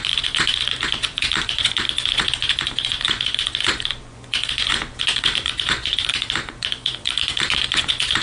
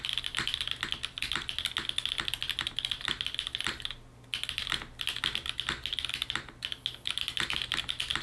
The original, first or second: second